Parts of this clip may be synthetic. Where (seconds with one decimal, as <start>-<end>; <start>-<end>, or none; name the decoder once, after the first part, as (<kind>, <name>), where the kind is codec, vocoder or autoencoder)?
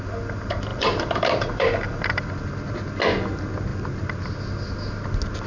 0.7-2.3 (vocoder, BigVGAN v2)